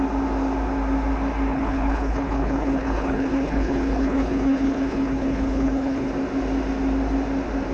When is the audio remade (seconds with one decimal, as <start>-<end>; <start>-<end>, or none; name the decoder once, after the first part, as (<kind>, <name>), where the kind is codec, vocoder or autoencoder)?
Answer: 1.5-6.1 (codec, HILCodec)